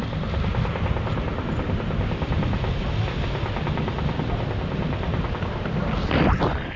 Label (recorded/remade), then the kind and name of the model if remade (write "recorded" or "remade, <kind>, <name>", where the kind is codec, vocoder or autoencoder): recorded